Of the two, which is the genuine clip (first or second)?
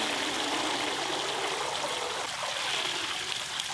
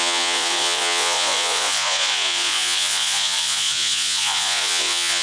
first